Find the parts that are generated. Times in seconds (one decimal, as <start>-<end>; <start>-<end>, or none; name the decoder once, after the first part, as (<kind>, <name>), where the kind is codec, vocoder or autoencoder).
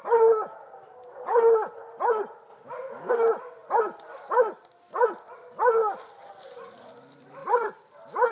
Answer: 1.3-1.8 (vocoder, BigVGAN v2); 7.4-7.9